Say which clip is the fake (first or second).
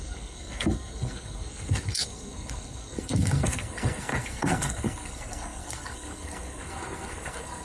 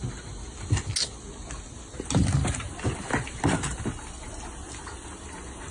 first